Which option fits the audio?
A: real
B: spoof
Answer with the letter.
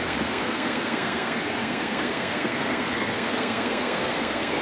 B